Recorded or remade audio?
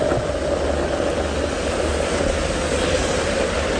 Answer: recorded